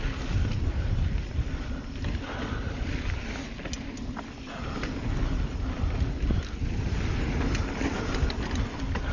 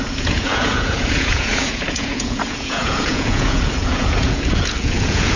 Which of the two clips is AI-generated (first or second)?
second